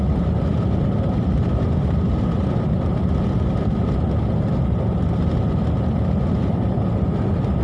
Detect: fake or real real